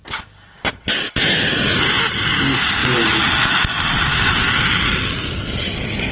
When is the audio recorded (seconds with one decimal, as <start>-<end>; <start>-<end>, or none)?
0.0-6.1